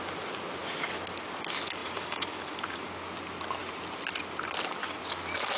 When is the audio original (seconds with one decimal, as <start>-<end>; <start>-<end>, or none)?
0.0-1.8; 2.9-5.6